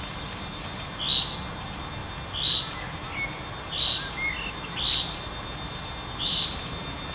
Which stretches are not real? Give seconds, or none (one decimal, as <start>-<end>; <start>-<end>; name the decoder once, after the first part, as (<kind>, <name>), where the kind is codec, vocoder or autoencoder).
none